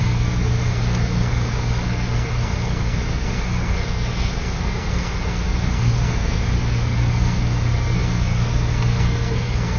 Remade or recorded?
remade